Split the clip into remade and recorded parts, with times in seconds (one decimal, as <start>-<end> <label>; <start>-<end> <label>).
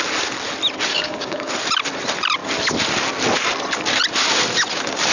0.0-0.9 recorded; 0.9-1.5 remade; 1.5-5.1 recorded